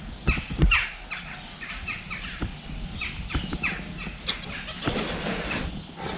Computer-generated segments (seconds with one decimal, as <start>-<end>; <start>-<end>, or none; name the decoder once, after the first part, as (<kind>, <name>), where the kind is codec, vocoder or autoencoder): none